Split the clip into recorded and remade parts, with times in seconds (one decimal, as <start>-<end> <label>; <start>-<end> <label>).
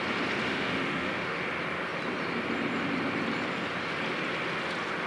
0.0-0.5 recorded; 0.5-1.4 remade; 1.4-5.1 recorded